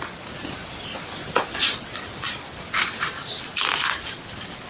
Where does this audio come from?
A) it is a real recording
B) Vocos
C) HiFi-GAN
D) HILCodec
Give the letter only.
A